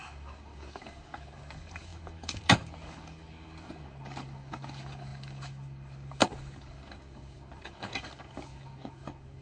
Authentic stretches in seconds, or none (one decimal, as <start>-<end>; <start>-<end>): none